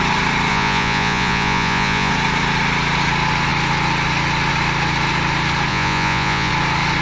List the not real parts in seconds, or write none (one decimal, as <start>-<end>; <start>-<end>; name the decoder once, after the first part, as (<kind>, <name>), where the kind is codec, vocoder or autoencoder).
0.5-2.1 (vocoder, Vocos); 5.7-6.5